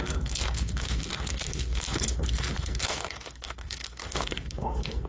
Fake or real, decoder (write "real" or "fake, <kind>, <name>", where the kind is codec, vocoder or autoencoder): fake, codec, SNAC